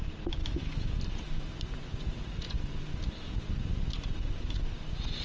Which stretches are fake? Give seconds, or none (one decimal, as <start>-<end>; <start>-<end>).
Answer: 0.4-0.9